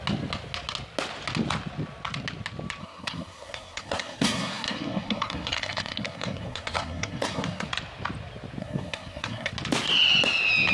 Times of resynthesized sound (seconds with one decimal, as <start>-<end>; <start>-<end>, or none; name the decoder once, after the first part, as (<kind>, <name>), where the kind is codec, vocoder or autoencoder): 2.8-7.7 (codec, SNAC); 8.6-9.5